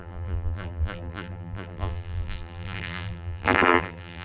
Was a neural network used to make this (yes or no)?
yes